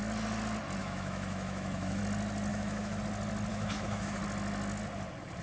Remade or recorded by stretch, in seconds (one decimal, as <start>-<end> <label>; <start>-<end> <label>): 0.0-0.8 recorded; 0.8-2.0 remade; 2.0-2.5 recorded; 2.5-3.0 remade; 3.0-3.5 recorded; 3.5-4.2 remade; 4.2-5.4 recorded